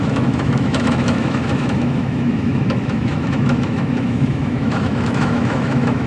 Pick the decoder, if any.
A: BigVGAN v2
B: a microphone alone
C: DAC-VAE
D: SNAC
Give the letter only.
C